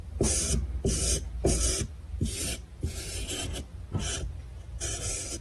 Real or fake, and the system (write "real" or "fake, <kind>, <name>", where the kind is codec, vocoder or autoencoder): real